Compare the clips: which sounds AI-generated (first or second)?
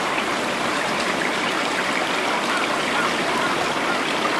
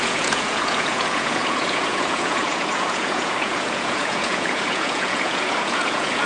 second